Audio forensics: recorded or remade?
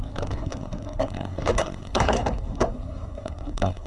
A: remade